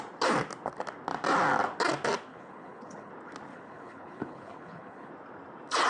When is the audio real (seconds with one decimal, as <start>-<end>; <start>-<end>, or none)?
0.0-2.3; 3.1-3.5; 5.1-5.9